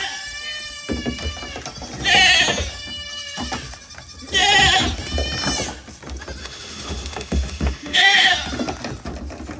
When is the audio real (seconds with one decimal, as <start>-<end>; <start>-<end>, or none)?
0.0-6.4; 8.3-9.6